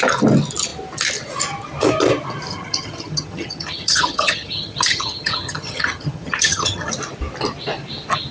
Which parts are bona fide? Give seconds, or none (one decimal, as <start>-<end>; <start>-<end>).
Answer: 0.0-2.5; 6.9-8.3